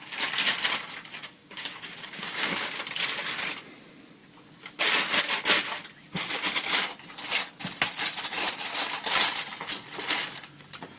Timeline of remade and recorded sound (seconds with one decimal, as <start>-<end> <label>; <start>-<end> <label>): 0.0-1.4 recorded; 1.4-2.5 remade; 2.5-11.0 recorded